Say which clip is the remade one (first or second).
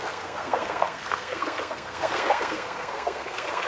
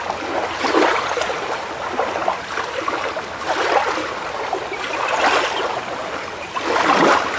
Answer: first